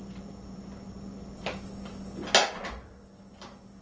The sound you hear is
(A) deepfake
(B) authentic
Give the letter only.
B